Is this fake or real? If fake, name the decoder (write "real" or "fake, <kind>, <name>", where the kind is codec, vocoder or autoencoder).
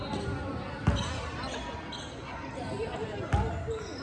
real